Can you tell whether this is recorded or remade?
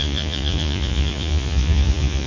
remade